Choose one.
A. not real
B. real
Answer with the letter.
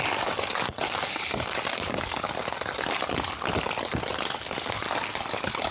B